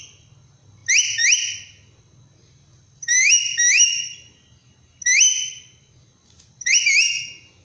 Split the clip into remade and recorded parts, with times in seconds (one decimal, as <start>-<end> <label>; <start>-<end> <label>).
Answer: 0.0-7.6 recorded